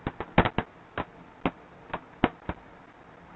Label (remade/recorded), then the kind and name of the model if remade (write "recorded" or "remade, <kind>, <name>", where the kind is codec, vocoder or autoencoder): recorded